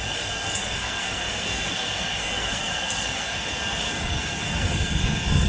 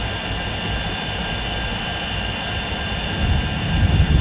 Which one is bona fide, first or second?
second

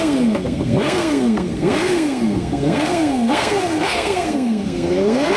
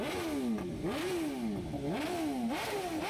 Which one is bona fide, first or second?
second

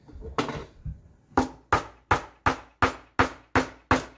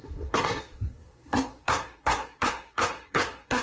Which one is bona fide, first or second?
first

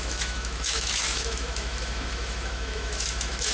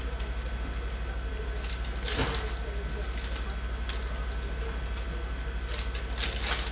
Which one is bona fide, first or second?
second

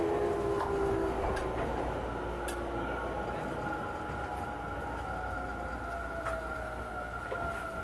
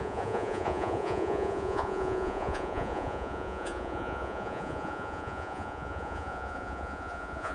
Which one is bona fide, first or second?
first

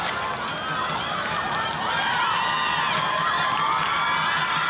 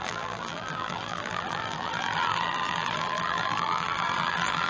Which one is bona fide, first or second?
first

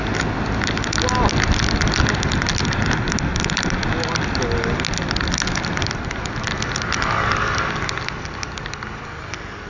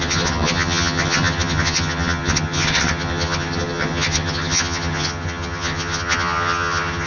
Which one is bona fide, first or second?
first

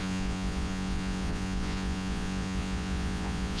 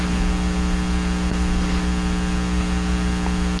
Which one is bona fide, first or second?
second